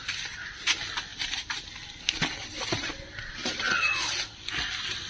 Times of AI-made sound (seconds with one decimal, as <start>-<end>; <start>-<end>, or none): 3.4-5.1